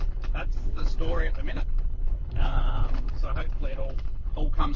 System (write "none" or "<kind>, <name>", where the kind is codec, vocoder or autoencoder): codec, HILCodec